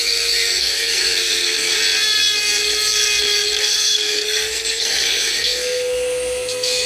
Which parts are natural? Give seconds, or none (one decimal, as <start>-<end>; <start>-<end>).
1.8-3.6